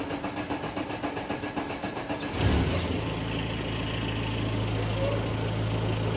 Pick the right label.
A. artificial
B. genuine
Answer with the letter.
B